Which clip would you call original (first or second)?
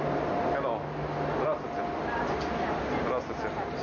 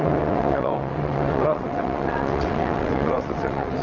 first